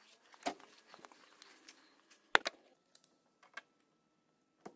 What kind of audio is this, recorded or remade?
recorded